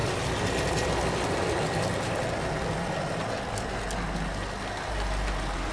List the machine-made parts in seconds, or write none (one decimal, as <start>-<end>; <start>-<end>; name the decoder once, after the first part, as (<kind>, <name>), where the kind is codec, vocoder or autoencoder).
none